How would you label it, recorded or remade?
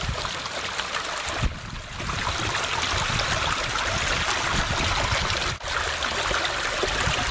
recorded